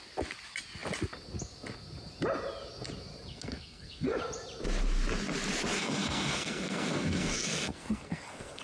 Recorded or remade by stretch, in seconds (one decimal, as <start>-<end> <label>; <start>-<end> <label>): 0.0-3.3 recorded; 3.3-4.2 remade; 4.2-5.7 recorded; 5.7-8.6 remade